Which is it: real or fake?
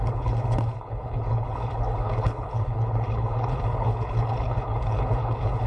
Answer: fake